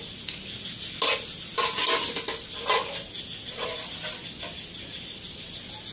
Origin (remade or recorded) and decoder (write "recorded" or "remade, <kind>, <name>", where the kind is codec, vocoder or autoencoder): recorded